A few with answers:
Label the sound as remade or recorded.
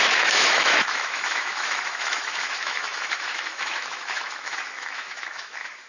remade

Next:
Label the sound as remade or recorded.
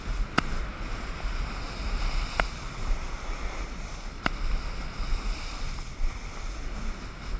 remade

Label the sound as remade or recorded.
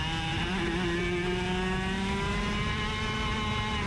recorded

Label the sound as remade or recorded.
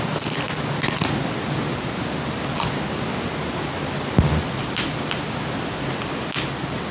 recorded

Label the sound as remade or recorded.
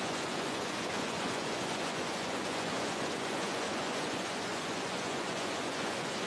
remade